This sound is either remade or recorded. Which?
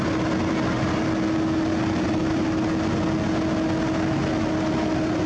recorded